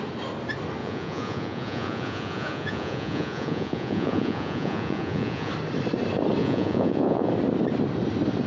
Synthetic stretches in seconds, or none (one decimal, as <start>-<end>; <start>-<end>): 0.8-5.5; 6.4-7.3